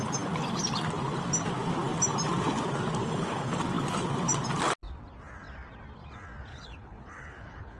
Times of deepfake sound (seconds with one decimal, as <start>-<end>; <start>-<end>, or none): 3.0-3.6; 6.5-7.8